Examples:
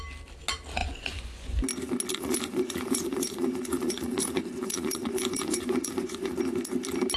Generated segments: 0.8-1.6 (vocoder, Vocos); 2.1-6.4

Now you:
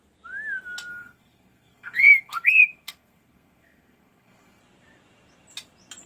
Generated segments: 0.9-4.6 (codec, SNAC)

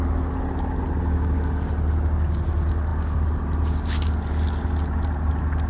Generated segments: none

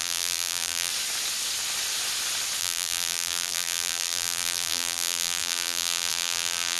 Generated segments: 0.0-0.9 (vocoder, BigVGAN v2); 2.6-6.8

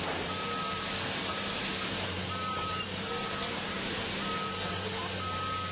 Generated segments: 1.6-5.0 (vocoder, BigVGAN v2)